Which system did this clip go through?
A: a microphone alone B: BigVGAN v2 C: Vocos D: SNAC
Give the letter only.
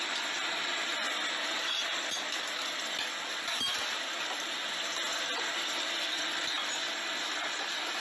A